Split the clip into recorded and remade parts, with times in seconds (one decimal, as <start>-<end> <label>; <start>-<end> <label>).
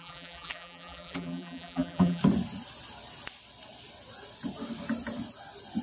0.0-2.2 remade; 2.2-5.8 recorded